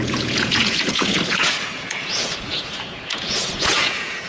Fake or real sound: fake